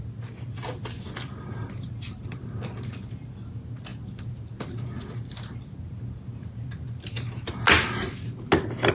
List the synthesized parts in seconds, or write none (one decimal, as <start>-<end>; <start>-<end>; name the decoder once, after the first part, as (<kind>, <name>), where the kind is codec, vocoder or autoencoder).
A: none